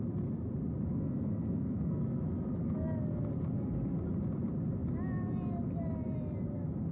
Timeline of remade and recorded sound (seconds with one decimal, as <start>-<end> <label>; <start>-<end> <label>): 0.0-0.9 recorded; 0.9-2.0 remade; 2.0-6.9 recorded